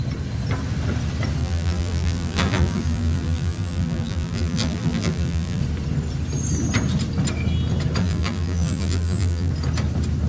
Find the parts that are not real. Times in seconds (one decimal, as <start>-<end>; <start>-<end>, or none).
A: 1.4-5.6; 8.0-9.5